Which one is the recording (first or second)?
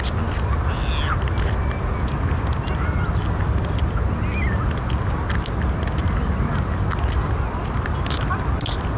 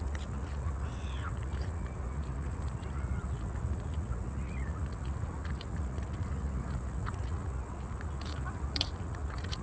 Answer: first